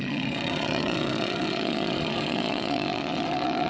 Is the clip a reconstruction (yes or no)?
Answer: yes